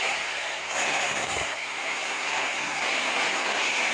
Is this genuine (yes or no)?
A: no